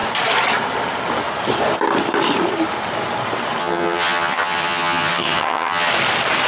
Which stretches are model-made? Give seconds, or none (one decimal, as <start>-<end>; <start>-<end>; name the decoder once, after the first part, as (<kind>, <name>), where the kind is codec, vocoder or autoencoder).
3.6-5.9 (vocoder, HiFi-GAN)